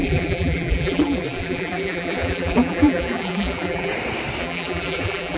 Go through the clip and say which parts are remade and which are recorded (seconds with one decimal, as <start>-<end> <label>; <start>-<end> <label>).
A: 0.0-3.9 remade; 3.9-4.4 recorded; 4.4-5.4 remade